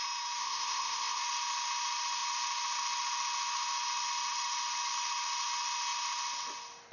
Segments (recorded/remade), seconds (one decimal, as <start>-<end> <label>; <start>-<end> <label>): 0.0-0.4 recorded; 0.4-1.2 remade; 1.2-6.9 recorded